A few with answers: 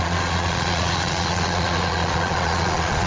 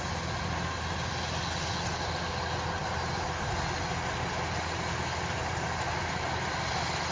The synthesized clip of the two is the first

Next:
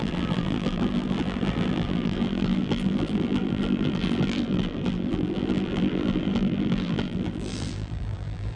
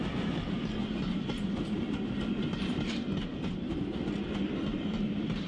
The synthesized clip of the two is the first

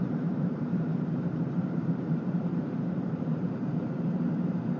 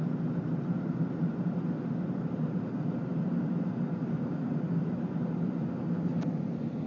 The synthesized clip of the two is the first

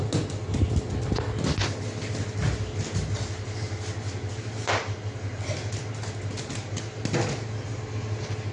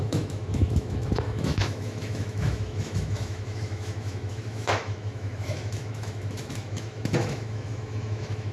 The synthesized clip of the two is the second